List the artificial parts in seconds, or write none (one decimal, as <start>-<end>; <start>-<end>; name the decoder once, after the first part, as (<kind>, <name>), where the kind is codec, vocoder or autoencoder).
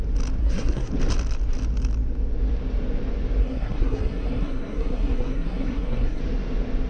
0.4-0.9 (codec, SNAC); 3.4-6.2